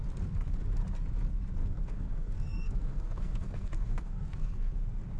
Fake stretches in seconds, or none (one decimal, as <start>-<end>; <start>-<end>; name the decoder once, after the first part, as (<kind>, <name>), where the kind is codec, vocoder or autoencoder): 1.6-4.7 (codec, SNAC)